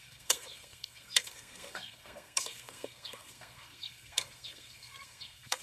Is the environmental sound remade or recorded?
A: remade